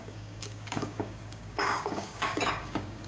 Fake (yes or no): yes